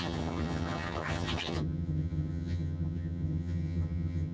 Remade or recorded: remade